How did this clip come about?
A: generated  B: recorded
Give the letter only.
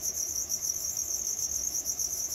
A